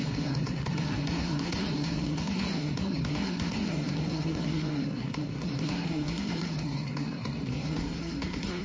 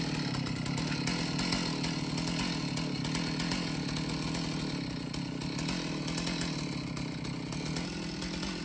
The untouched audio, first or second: second